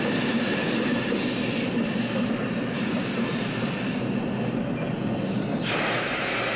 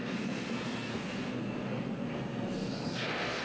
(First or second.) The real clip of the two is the first